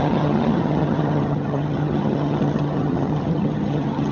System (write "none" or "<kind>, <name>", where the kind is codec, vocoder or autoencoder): vocoder, HiFi-GAN